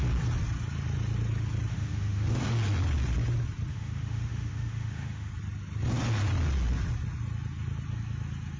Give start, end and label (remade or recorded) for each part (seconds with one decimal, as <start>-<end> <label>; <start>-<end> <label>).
0.0-1.7 recorded; 1.7-2.4 remade; 2.4-3.7 recorded; 3.7-5.3 remade; 5.3-8.6 recorded